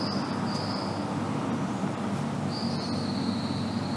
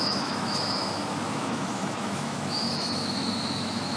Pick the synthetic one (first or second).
second